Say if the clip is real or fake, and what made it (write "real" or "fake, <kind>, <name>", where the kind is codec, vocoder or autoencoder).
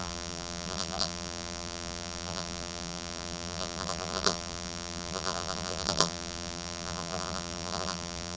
fake, vocoder, BigVGAN v2